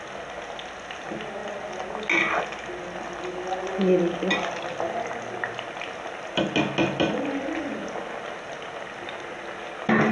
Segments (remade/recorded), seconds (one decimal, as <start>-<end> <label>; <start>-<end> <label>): 0.0-10.1 recorded